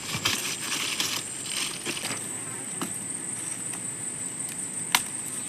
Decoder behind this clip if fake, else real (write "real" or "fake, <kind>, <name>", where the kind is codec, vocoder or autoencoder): real